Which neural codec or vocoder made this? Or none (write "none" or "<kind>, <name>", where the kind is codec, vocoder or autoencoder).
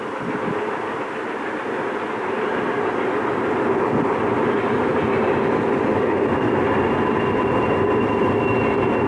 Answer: none